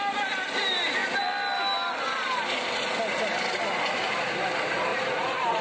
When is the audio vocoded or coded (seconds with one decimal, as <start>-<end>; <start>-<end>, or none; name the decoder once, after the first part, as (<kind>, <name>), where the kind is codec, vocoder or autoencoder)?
4.9-5.6 (vocoder, Vocos)